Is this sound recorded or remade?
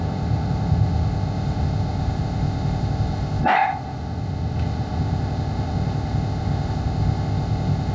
remade